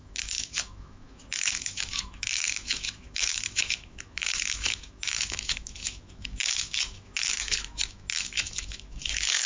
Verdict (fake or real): fake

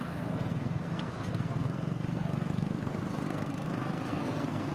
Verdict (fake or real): fake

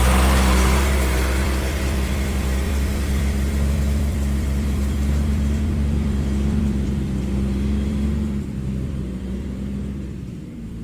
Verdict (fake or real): fake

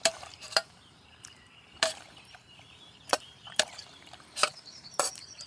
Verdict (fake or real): fake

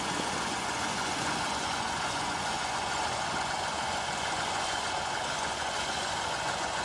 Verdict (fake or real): fake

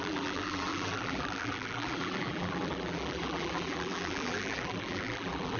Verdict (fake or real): fake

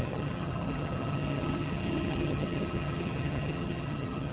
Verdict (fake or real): fake